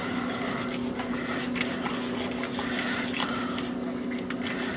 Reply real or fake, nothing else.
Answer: real